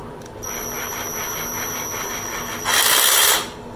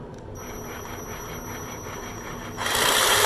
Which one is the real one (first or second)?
first